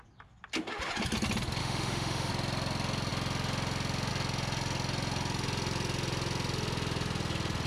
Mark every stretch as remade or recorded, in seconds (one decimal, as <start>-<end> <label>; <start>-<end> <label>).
0.0-1.6 recorded; 1.6-2.3 remade; 2.3-7.7 recorded